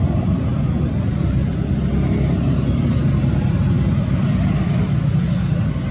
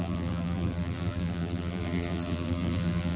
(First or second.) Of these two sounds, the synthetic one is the second